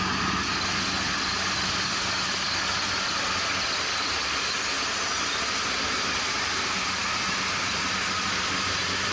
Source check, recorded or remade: recorded